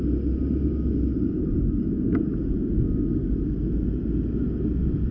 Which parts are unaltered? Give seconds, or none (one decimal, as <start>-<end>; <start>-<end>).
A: 0.0-1.1; 2.5-5.1